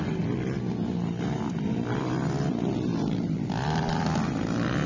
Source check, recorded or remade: recorded